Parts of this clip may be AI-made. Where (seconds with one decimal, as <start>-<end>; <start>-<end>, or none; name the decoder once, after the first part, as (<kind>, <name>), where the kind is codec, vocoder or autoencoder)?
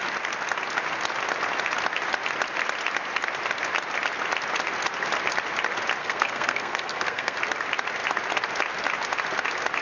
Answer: 6.0-7.4 (codec, SNAC)